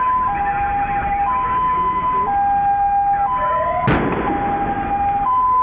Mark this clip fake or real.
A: real